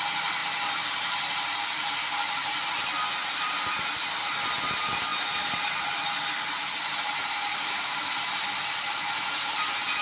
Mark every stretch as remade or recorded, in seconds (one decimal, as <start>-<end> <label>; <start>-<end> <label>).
0.0-7.5 recorded; 7.5-8.1 remade; 8.1-10.0 recorded